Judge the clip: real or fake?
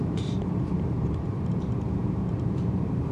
fake